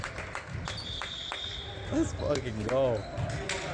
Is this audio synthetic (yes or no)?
no